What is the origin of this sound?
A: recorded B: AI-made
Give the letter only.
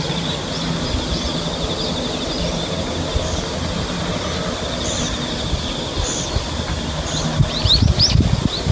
A